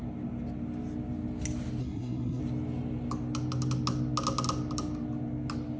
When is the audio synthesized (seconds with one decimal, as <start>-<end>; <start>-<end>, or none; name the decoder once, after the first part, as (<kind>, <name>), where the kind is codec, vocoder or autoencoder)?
1.8-2.4 (codec, SNAC)